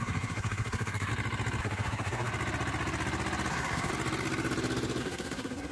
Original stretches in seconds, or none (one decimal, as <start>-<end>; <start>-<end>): 1.1-1.6; 2.3-3.5; 3.9-5.0